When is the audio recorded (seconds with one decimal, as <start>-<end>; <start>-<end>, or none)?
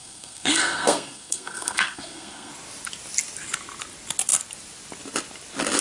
2.5-5.8